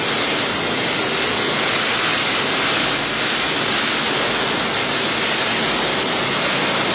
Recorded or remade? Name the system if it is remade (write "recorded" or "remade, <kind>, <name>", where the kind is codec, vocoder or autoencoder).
recorded